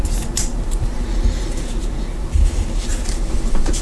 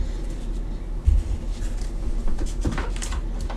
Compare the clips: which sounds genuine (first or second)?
second